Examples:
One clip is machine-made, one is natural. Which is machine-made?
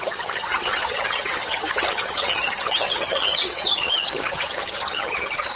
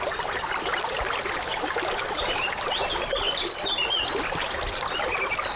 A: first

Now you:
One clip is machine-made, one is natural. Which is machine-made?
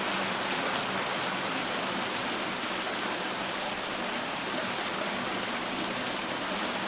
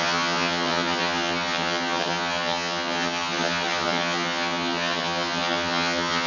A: second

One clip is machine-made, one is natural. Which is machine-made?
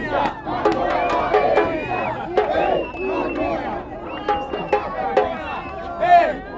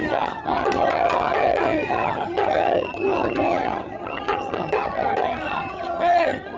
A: second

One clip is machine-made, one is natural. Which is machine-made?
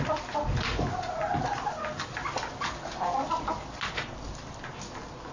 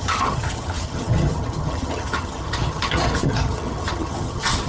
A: second